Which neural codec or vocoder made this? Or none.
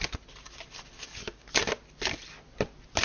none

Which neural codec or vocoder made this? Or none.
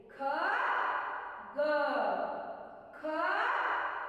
none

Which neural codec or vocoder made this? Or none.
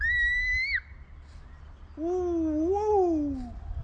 none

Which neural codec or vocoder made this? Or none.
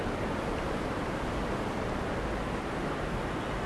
none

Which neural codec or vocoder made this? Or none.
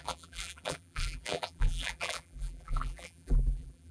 vocoder, BigVGAN v2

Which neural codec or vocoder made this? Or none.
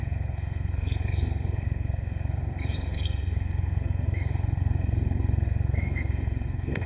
codec, SNAC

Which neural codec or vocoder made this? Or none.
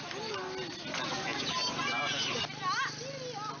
none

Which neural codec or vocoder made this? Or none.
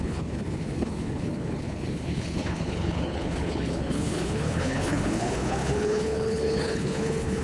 codec, HILCodec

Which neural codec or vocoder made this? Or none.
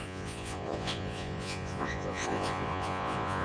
vocoder, Vocos